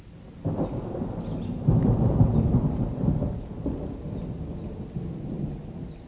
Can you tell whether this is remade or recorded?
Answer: recorded